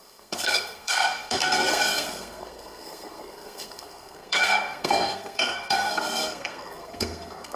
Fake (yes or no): yes